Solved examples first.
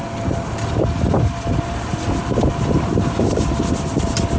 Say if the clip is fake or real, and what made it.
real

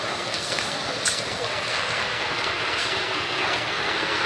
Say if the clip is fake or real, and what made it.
fake, codec, SNAC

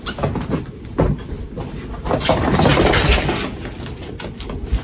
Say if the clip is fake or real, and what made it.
real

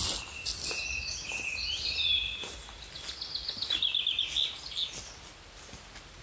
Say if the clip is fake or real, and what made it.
real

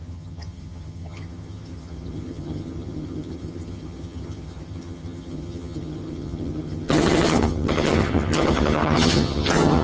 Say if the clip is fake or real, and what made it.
fake, vocoder, HiFi-GAN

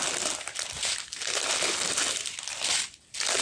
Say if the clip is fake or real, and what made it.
real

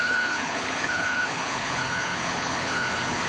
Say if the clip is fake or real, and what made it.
fake, codec, HILCodec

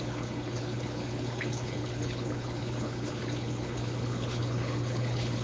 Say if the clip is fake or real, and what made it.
fake, codec, HILCodec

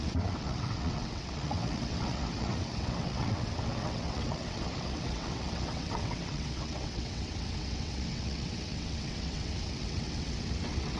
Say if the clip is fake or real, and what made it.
fake, vocoder, WaveNeXt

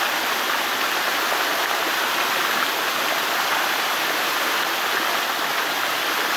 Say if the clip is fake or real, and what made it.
real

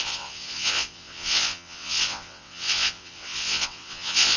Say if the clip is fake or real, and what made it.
fake, vocoder, WaveNeXt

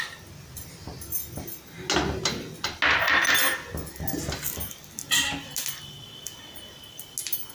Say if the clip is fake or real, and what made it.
real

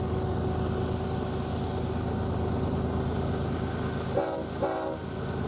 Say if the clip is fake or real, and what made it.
real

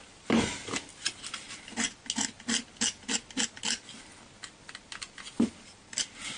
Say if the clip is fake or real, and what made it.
real